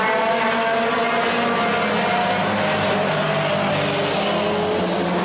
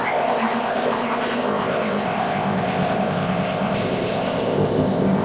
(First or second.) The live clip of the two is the first